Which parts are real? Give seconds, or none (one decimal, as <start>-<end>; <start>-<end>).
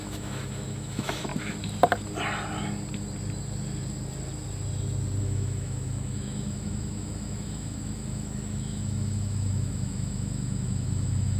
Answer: 1.3-5.2